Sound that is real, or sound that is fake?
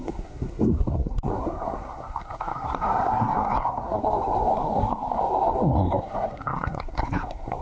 fake